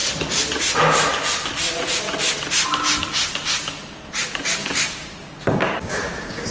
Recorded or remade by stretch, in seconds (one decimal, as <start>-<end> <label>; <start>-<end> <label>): 0.0-4.6 recorded; 4.6-6.5 remade